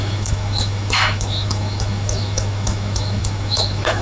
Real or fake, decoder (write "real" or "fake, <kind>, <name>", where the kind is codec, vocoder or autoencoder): fake, autoencoder, DAC-VAE